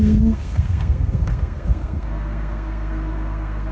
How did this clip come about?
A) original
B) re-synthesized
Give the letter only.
B